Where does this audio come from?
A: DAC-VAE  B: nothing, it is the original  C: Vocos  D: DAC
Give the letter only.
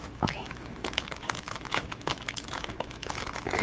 A